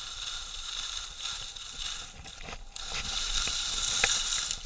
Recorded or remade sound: recorded